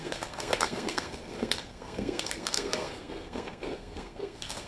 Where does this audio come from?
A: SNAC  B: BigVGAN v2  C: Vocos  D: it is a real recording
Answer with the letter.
A